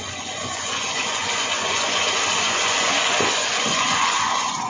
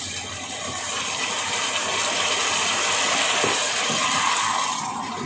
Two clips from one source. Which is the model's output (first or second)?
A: first